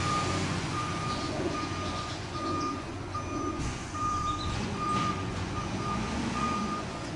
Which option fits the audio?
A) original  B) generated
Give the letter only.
B